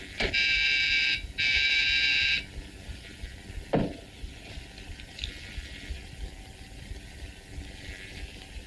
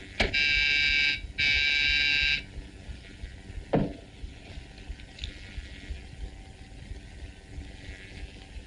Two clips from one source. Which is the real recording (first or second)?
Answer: second